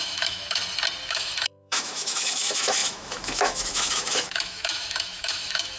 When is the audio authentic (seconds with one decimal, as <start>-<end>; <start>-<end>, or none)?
0.6-1.1